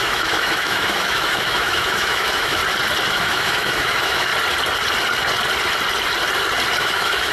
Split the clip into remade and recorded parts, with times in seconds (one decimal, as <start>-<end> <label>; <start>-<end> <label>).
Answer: 0.0-2.6 remade; 2.6-3.1 recorded; 3.1-4.3 remade; 4.3-6.8 recorded; 6.8-7.3 remade